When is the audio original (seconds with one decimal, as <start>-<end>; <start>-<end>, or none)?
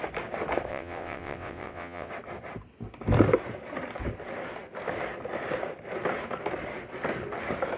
0.0-0.7; 2.1-7.8